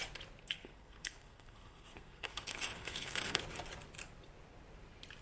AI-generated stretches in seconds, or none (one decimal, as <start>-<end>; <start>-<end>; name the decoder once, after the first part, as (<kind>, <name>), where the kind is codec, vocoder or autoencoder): 0.4-3.4 (codec, SNAC)